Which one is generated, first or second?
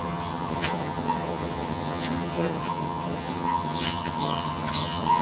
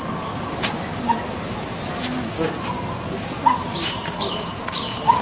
first